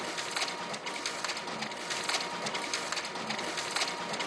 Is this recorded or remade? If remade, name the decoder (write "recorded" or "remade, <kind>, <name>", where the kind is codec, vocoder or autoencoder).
recorded